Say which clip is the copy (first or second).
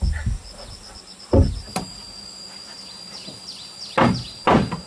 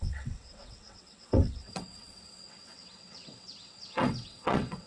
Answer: second